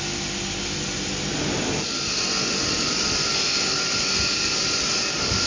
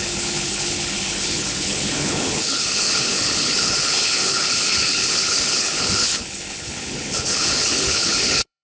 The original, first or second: first